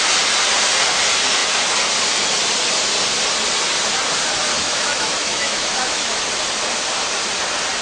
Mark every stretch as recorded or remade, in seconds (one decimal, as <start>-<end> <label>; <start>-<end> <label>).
0.0-4.5 recorded; 4.5-6.2 remade; 6.2-7.8 recorded